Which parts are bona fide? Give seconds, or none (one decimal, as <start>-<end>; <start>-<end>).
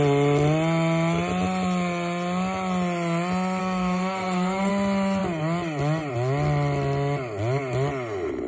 0.0-3.6; 4.7-8.5